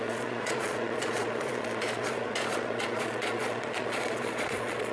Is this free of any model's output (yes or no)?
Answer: no